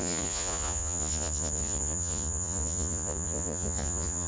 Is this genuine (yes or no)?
no